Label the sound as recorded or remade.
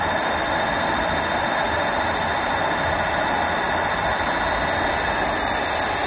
recorded